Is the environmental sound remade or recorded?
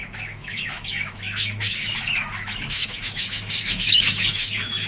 remade